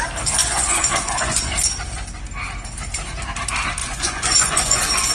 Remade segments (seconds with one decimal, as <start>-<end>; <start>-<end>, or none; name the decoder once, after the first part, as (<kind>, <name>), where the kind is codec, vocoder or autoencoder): 0.4-1.5 (vocoder, Vocos); 3.8-5.1